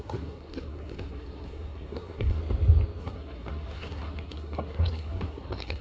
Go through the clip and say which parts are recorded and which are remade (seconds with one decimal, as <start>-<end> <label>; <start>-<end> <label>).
0.0-2.4 remade; 2.4-3.0 recorded; 3.0-5.8 remade